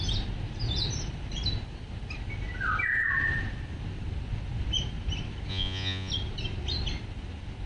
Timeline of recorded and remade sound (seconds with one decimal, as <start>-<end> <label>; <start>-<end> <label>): 0.0-5.5 recorded; 5.5-6.1 remade; 6.1-7.7 recorded